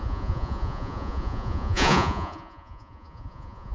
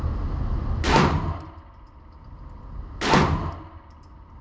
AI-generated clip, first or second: first